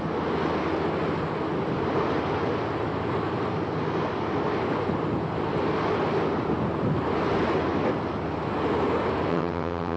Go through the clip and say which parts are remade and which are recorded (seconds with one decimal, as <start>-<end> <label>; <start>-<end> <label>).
0.0-9.3 recorded; 9.3-10.0 remade